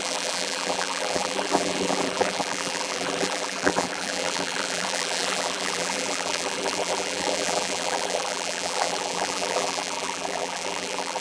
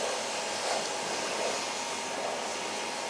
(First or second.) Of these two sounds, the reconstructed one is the first